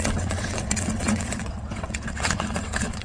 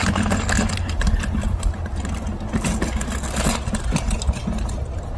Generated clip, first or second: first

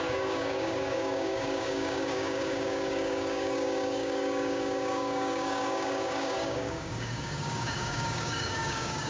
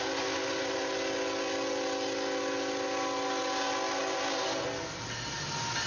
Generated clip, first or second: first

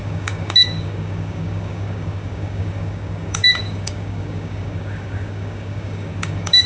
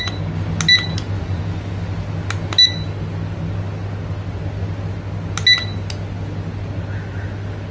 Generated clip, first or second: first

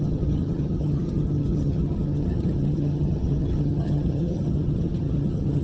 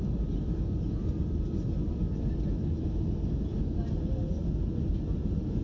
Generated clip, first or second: first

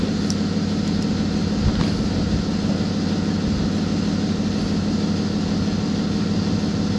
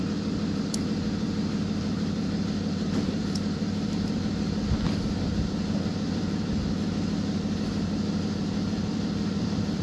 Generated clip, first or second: second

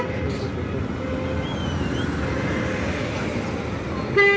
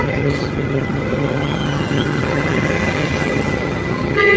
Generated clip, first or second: second